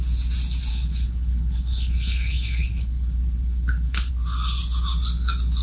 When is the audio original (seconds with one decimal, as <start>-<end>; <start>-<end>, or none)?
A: 0.0-0.7; 4.1-5.6